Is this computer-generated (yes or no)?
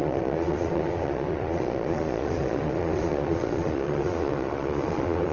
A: yes